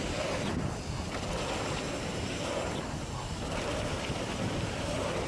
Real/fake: real